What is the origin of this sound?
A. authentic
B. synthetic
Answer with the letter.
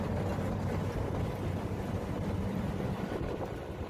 A